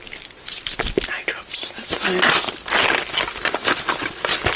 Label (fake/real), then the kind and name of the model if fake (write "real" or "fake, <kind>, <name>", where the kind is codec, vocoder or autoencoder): real